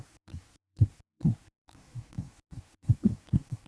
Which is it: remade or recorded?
remade